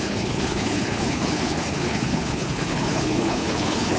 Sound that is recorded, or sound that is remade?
remade